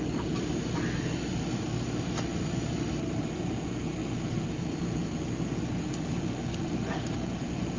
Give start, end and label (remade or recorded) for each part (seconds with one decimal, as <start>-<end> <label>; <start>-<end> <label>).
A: 0.0-7.8 recorded